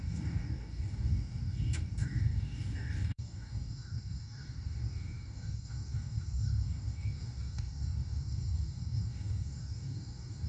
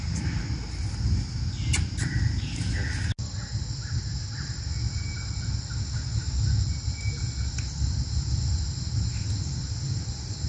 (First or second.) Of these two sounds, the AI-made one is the first